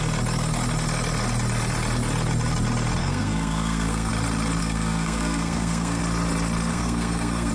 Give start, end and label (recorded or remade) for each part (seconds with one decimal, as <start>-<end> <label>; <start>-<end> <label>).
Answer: 0.0-3.0 recorded; 3.0-4.1 remade; 4.1-4.6 recorded; 4.6-6.0 remade; 6.0-6.7 recorded; 6.7-7.5 remade

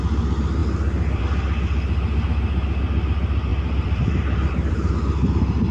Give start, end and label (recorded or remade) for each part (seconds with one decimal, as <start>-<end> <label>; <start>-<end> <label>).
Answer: 0.0-3.5 recorded; 3.5-4.9 remade; 4.9-5.7 recorded

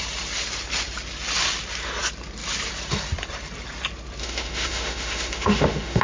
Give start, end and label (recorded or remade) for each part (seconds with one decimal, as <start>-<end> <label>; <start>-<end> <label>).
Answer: 0.0-4.2 recorded; 4.2-6.0 remade

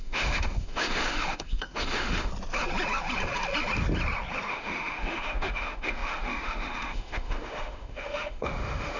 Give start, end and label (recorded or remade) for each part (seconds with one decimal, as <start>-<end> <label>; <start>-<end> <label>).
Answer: 0.0-2.3 remade; 2.3-4.5 recorded; 4.5-9.0 remade